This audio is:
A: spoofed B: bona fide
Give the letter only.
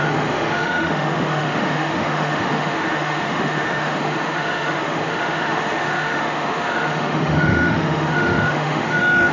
A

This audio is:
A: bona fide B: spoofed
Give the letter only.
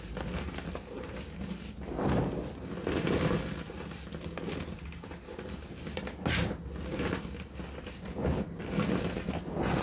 A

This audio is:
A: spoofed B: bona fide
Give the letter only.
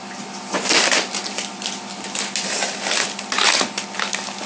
B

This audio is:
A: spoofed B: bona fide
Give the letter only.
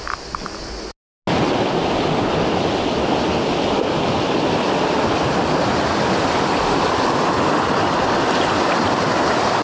B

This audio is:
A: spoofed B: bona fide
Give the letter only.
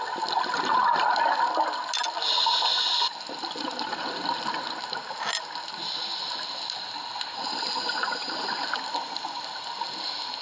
B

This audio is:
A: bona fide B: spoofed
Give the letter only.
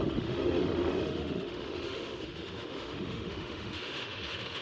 B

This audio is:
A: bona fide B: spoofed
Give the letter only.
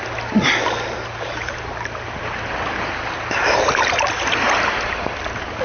A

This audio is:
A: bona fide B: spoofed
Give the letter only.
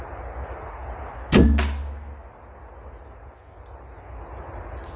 A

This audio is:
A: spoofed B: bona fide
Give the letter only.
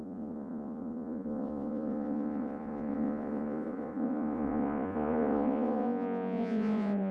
A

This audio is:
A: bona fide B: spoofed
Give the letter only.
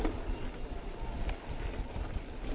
A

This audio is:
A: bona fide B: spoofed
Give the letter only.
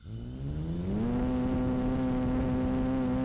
A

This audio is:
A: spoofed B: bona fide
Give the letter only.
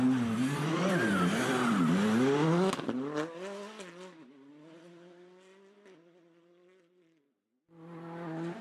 B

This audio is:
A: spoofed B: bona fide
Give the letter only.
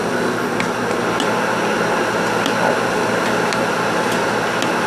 B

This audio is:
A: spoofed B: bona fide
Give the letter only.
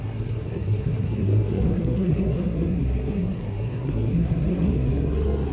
A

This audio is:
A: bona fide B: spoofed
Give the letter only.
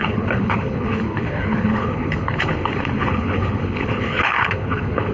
B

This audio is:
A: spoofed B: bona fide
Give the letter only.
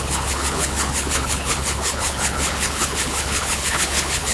A